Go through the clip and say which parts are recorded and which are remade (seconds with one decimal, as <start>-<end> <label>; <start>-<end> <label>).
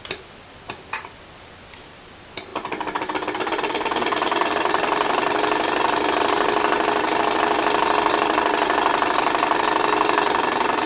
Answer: 0.0-10.9 recorded